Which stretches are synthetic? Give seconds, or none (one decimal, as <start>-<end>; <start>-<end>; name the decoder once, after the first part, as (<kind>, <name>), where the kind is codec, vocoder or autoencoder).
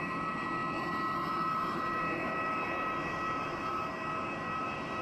none